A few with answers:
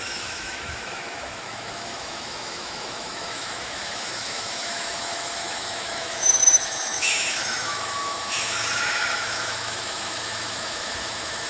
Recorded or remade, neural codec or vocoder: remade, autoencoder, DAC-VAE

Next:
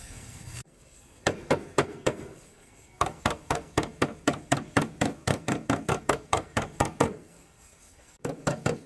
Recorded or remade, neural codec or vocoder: remade, codec, SNAC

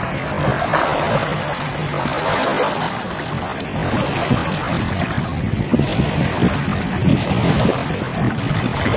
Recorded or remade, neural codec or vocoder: recorded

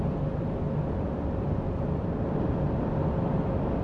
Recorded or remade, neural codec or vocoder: recorded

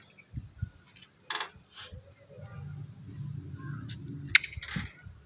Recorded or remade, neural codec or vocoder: recorded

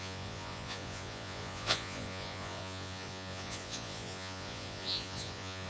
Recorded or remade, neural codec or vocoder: remade, vocoder, Vocos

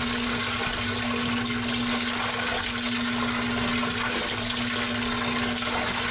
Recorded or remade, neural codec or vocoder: recorded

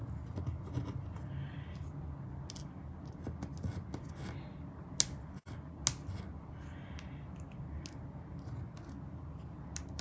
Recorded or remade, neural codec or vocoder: recorded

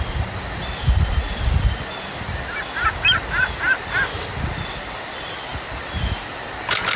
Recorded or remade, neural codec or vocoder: recorded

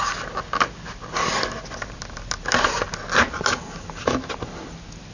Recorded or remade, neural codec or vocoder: recorded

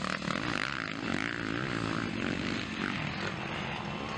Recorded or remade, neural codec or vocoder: remade, vocoder, BigVGAN v2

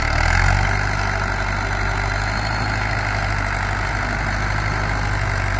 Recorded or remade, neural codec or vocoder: recorded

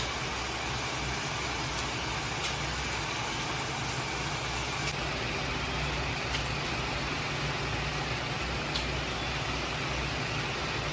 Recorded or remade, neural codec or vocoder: recorded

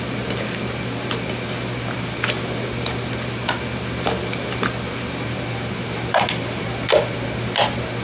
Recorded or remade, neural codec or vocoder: recorded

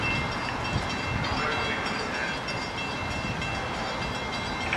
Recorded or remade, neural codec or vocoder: recorded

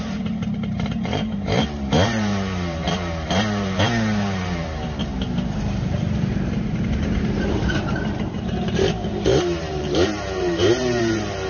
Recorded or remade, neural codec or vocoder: remade, vocoder, BigVGAN v2